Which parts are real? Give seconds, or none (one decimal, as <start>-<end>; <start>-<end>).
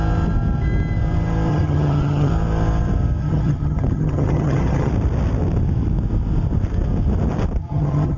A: 0.0-1.5; 2.3-3.2; 4.9-7.6